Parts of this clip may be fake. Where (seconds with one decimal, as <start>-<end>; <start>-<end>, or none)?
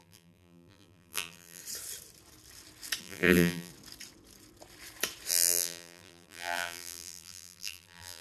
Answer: 0.0-1.6; 3.0-3.7; 5.3-8.2